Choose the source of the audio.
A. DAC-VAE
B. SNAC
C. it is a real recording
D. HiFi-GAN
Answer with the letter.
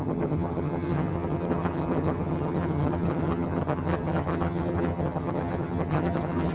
D